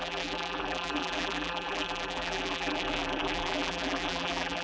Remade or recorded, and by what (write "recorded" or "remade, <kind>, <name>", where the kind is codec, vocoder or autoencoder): remade, vocoder, BigVGAN v2